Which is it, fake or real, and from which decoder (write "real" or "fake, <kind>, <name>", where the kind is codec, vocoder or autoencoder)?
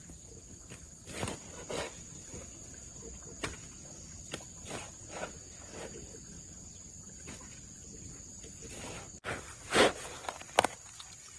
real